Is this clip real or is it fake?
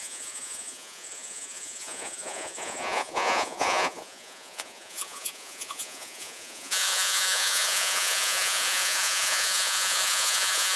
fake